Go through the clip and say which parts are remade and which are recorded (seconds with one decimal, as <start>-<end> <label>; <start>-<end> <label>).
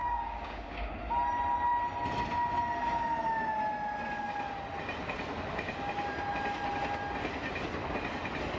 0.0-1.0 remade; 1.0-8.6 recorded